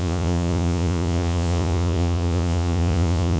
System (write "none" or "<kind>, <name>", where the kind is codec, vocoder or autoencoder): vocoder, Vocos